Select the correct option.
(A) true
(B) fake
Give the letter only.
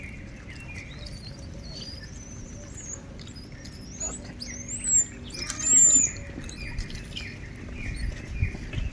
A